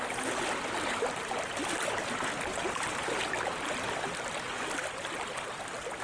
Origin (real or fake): real